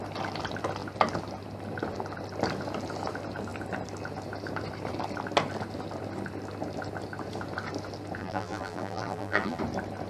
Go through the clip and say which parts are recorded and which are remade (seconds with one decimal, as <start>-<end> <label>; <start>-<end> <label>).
0.0-8.2 recorded; 8.2-9.6 remade; 9.6-10.1 recorded